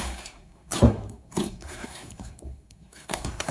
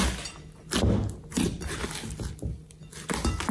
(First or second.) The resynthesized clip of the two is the first